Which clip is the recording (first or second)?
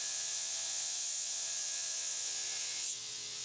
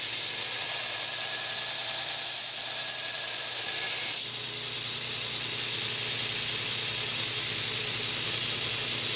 second